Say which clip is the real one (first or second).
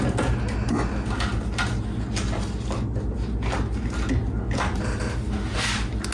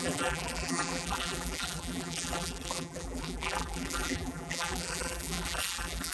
first